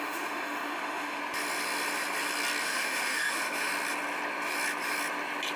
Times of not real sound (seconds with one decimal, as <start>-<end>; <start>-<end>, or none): 0.0-1.2; 2.6-3.7